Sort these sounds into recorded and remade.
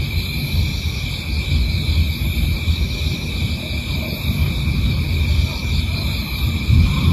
recorded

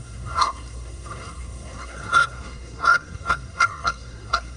remade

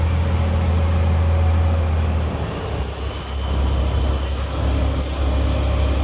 recorded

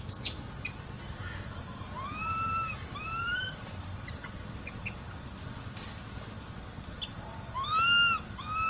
recorded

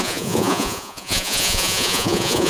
remade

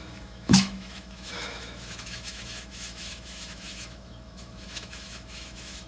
remade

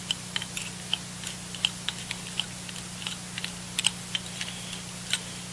remade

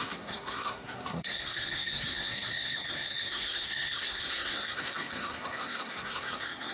remade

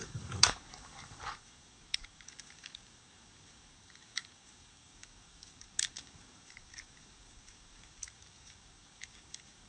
remade